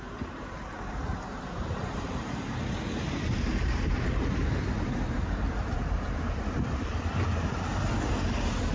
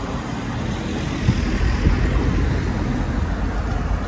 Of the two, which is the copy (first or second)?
first